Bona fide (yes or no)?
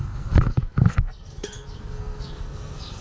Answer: no